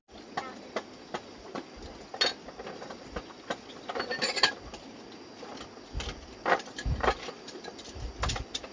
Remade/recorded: recorded